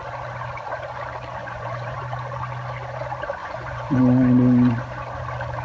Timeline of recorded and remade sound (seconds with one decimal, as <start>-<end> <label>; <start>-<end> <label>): 0.0-1.4 recorded; 1.4-2.0 remade; 2.0-3.4 recorded; 3.4-4.0 remade; 4.0-5.6 recorded